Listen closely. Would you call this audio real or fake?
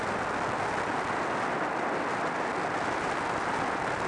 real